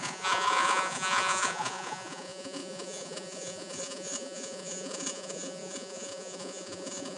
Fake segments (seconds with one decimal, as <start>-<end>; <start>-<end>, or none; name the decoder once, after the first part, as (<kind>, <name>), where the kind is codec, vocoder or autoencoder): 0.0-7.2 (vocoder, Vocos)